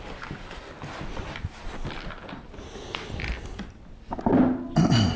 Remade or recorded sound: recorded